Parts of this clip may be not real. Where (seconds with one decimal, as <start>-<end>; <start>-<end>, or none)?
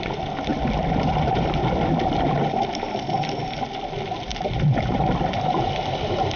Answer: 0.5-3.6; 4.3-6.0